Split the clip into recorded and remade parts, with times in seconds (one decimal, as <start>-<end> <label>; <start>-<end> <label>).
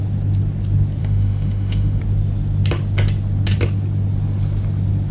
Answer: 0.0-1.0 recorded; 1.0-2.0 remade; 2.0-5.1 recorded